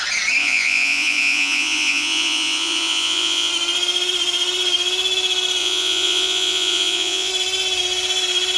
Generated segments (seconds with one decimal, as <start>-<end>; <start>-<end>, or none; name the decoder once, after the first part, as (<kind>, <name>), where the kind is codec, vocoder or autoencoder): 0.4-3.5 (vocoder, Vocos); 5.6-7.3